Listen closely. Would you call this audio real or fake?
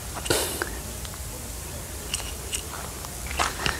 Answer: real